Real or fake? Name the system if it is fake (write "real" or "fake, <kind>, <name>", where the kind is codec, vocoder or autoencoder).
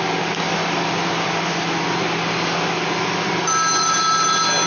real